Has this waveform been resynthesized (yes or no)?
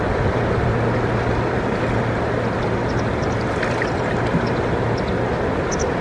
no